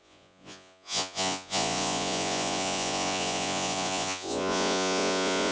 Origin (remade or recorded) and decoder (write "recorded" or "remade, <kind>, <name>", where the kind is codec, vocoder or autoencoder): remade, vocoder, Vocos